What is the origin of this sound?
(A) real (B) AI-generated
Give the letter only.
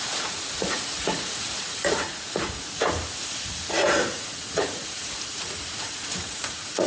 B